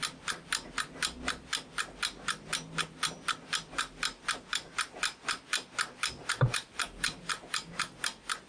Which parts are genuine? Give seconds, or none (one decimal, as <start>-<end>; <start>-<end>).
0.0-6.2

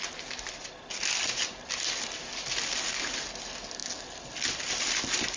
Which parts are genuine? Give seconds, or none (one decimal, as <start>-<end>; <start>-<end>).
0.0-5.4

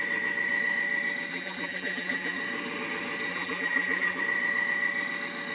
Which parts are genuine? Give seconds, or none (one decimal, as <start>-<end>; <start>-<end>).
0.0-1.3; 2.4-3.3; 4.2-5.5

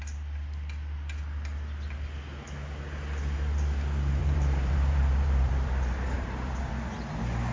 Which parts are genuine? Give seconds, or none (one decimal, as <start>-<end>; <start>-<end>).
0.0-4.2; 6.7-7.5

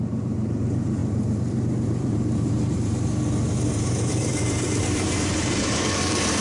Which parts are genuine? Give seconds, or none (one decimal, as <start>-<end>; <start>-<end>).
none